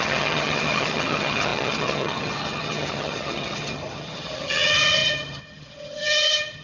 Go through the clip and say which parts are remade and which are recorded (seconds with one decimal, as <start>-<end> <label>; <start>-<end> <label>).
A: 0.0-6.6 remade